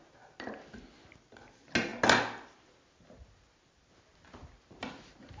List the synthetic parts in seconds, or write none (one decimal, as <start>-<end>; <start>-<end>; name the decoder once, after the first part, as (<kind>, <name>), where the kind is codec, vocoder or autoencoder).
none